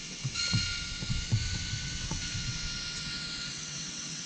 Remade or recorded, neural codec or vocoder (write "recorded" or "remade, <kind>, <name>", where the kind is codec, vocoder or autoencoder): remade, vocoder, WaveNeXt